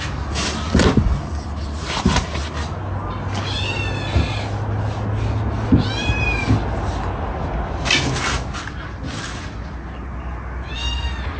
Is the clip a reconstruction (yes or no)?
no